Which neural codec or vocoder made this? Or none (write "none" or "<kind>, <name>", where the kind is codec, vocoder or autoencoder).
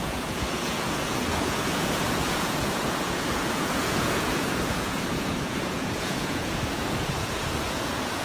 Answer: vocoder, Vocos